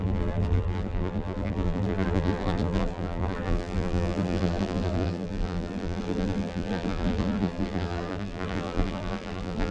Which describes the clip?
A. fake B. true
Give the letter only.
A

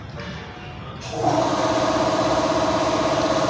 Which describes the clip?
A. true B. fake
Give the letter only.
A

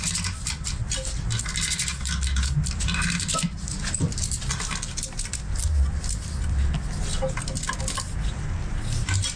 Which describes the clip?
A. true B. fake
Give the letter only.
A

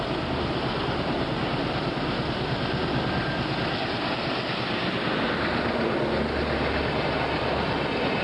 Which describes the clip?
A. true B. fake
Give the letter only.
A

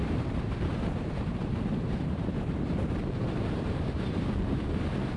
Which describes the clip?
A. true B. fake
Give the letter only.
B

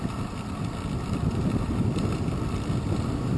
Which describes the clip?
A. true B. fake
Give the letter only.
A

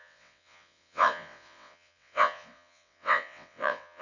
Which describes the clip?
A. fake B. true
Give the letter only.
A